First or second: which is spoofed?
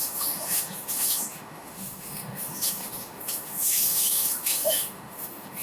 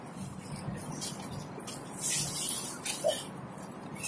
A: first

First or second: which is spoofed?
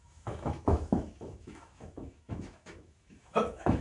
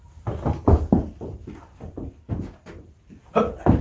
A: first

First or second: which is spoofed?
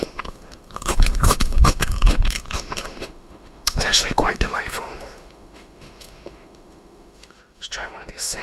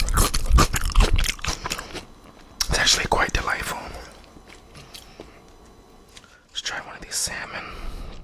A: first